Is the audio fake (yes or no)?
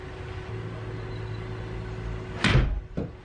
no